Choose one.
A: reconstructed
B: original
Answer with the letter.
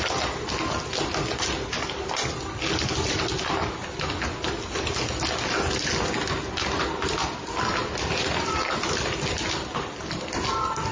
B